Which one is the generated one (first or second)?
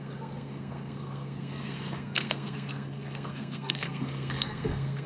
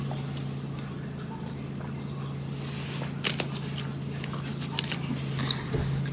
first